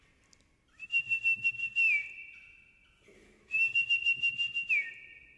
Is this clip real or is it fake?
real